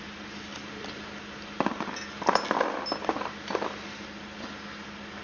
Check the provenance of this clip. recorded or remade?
recorded